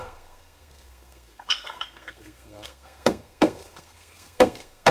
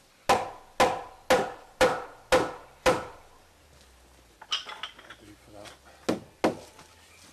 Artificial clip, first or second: first